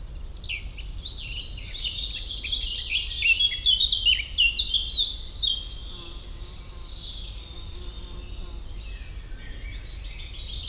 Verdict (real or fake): real